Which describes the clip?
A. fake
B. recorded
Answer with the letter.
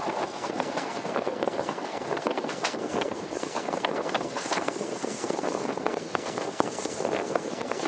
A